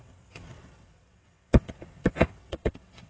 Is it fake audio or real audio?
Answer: fake